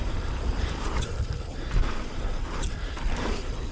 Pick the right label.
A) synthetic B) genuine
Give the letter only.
A